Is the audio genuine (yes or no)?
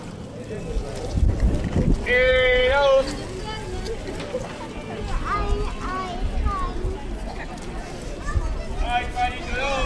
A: yes